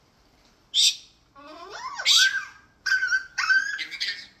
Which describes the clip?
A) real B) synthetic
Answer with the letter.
A